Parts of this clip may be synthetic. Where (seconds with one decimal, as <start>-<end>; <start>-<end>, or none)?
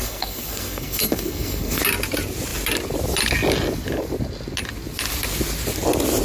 0.0-1.8